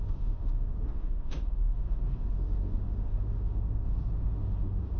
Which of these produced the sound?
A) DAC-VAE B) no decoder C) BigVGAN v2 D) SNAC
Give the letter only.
A